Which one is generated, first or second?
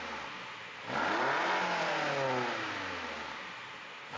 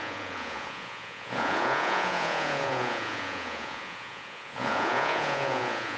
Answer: second